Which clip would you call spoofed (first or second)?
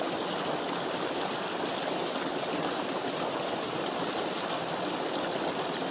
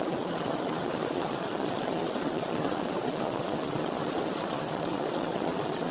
second